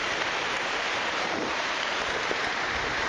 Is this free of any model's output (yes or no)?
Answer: no